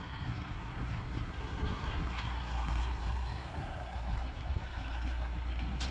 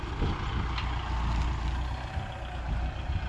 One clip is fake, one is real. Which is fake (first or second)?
first